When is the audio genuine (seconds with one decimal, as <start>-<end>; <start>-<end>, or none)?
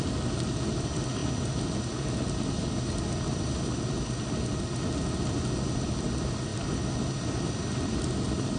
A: 0.0-8.6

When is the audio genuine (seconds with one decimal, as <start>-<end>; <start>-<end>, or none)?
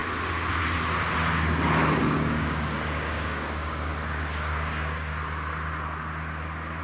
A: 0.0-2.0; 3.9-4.4; 5.1-6.8